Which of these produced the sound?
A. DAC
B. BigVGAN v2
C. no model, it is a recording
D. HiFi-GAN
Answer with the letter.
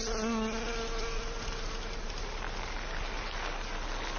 C